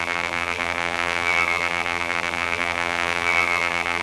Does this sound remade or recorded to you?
remade